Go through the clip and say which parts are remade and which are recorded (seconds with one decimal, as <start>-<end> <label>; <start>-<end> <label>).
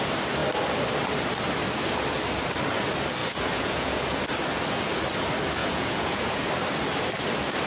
0.0-3.2 recorded; 3.2-4.2 remade; 4.2-5.6 recorded; 5.6-6.5 remade; 6.5-7.7 recorded